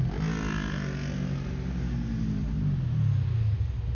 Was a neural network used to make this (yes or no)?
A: no